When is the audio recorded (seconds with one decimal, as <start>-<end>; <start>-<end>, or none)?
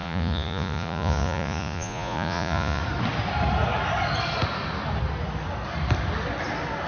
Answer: 2.8-6.9